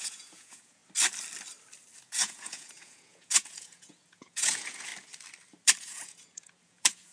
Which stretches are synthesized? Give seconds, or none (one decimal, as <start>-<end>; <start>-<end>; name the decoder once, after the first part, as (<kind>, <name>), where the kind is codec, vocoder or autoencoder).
0.0-0.8 (vocoder, Vocos); 2.0-4.9; 5.8-7.1